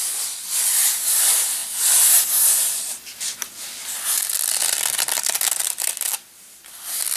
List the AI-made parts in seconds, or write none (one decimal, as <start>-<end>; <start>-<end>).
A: none